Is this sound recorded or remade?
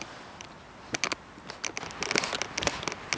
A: recorded